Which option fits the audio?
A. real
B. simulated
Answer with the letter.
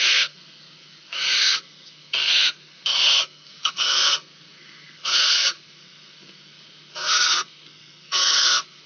B